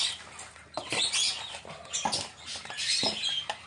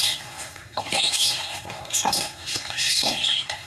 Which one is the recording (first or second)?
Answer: first